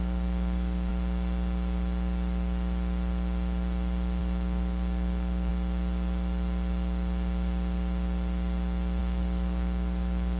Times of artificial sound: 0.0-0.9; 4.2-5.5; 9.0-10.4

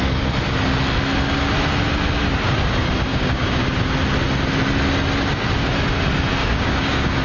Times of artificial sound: 3.1-3.6; 6.4-7.2

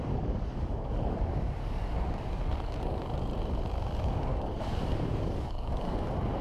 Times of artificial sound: 0.0-3.3; 4.0-6.4

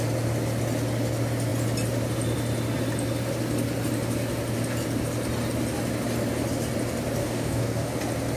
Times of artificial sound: 7.2-7.9

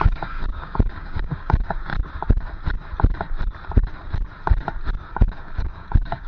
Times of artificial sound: 0.0-1.9; 5.1-6.3

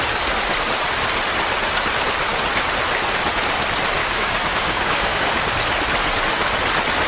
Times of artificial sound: 4.0-5.3